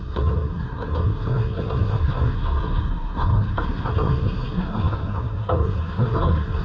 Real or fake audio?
fake